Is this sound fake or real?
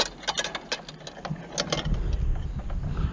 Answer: real